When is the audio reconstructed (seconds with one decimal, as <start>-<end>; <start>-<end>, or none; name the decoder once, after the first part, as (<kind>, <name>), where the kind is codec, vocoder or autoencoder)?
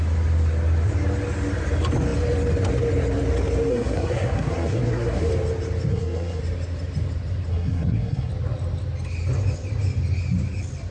3.7-5.3 (codec, SNAC); 5.9-6.4; 7.5-8.3